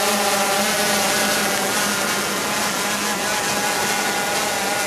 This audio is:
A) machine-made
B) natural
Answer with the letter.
B